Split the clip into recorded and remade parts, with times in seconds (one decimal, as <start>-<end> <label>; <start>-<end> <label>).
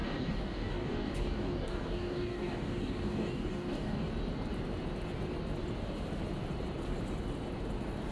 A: 0.0-4.1 remade; 4.1-8.1 recorded